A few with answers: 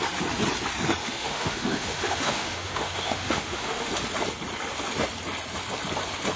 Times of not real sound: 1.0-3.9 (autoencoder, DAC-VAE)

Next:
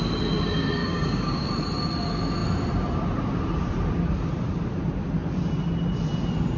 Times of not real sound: 0.8-1.5 (codec, DAC)